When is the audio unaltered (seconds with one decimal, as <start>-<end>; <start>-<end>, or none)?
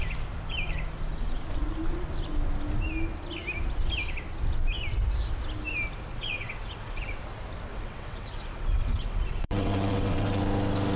0.0-6.1; 7.2-7.7; 10.4-11.0